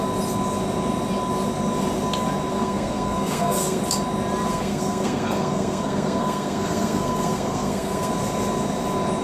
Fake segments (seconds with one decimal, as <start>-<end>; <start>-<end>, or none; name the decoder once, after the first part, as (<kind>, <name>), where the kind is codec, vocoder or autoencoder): 2.5-3.8 (codec, SNAC); 4.5-8.1